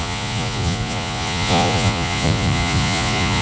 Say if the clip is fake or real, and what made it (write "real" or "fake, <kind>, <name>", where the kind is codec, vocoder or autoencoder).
fake, vocoder, Vocos